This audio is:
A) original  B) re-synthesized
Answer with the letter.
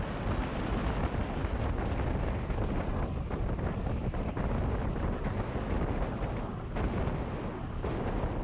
A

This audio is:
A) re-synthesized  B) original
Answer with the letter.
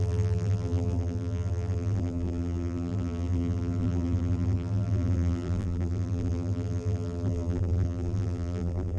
A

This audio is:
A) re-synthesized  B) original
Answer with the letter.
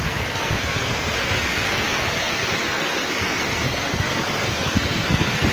A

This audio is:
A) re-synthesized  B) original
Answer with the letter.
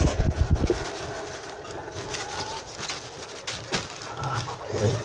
B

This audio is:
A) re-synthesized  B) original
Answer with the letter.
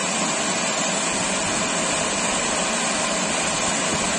B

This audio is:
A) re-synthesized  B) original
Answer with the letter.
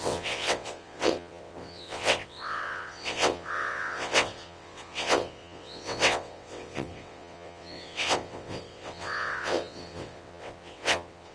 A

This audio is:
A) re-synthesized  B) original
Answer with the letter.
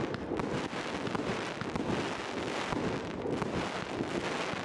B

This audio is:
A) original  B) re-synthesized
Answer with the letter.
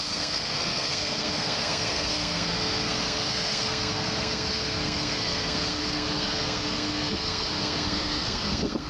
B